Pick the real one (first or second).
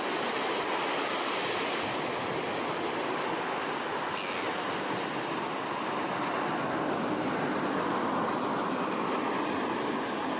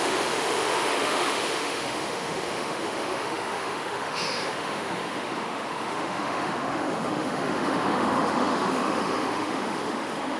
first